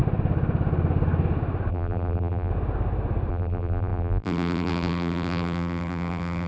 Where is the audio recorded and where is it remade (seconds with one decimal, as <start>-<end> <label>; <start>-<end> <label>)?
0.0-1.7 recorded; 1.7-2.5 remade; 2.5-3.3 recorded; 3.3-6.5 remade